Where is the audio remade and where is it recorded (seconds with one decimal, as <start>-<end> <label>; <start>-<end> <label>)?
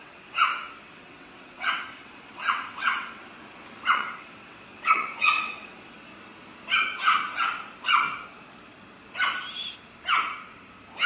0.0-3.2 remade; 3.2-3.9 recorded; 3.9-6.1 remade; 6.1-11.1 recorded